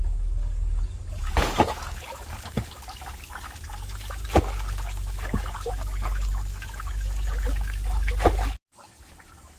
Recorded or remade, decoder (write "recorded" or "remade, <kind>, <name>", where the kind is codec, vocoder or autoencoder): remade, codec, DAC